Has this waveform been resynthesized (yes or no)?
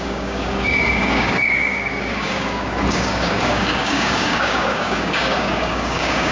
yes